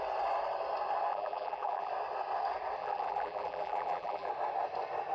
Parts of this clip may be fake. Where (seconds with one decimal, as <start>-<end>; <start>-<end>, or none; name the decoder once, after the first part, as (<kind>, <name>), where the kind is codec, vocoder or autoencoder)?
1.1-1.9 (vocoder, BigVGAN v2); 2.8-4.3